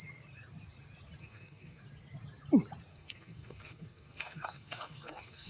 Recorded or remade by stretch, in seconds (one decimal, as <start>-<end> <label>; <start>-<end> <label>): 0.0-1.2 recorded; 1.2-1.8 remade; 1.8-2.9 recorded; 2.9-5.5 remade